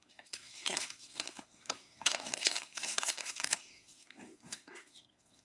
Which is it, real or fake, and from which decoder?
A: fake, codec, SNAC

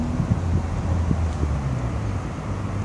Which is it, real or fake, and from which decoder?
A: real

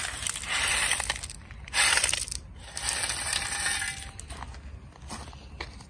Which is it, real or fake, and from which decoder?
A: real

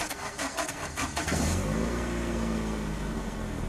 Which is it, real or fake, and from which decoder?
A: fake, codec, SNAC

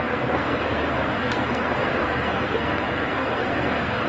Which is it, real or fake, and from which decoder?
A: fake, codec, SNAC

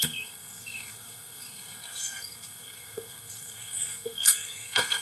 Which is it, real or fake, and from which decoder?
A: fake, codec, SNAC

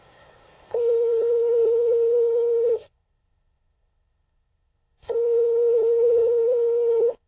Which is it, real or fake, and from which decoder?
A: fake, codec, SNAC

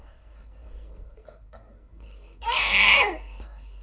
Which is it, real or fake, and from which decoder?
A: fake, codec, SNAC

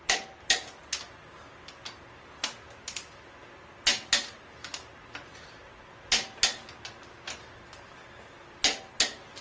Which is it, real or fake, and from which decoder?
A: real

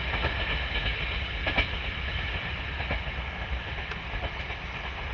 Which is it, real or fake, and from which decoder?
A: real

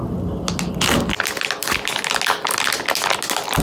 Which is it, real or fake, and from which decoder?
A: real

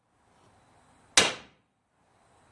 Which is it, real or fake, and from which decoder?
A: real